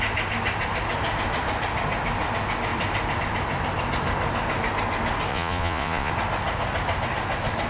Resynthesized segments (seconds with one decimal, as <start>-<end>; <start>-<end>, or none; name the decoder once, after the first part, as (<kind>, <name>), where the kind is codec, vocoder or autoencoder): 5.3-6.1 (vocoder, Vocos)